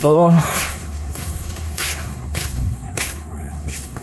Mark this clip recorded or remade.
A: remade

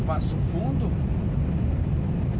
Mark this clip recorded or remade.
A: recorded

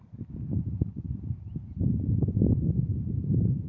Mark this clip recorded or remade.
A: remade